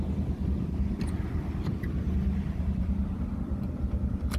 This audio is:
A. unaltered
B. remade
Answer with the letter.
A